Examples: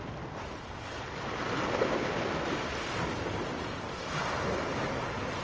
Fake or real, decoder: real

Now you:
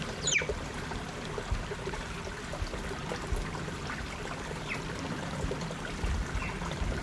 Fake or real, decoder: real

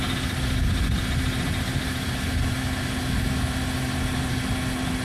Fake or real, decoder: real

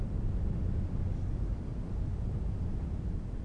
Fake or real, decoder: real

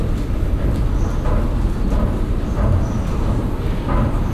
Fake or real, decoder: real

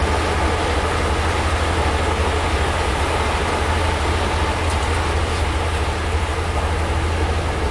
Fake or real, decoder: real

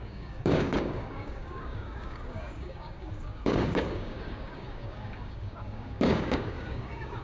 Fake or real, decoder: fake, codec, DAC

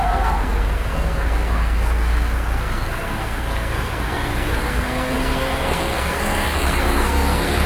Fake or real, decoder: fake, codec, SNAC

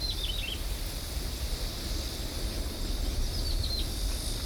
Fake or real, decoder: fake, vocoder, BigVGAN v2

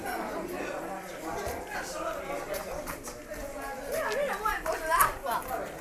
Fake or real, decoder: real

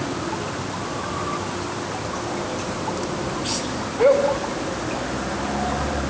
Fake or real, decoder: real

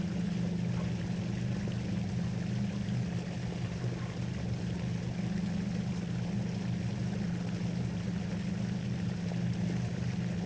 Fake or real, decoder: real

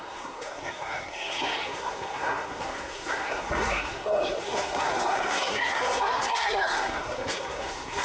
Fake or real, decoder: fake, codec, SNAC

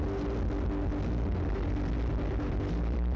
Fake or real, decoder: real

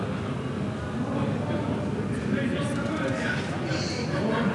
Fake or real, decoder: real